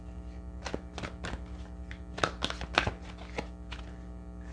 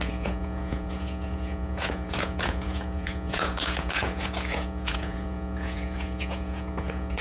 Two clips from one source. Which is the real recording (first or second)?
first